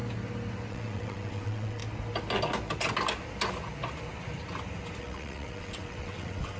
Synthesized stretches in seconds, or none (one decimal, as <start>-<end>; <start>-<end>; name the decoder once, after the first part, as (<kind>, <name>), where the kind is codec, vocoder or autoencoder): 0.7-1.8 (vocoder, WaveNeXt); 5.0-6.6